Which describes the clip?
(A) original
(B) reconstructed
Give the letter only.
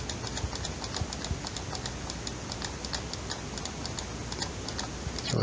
A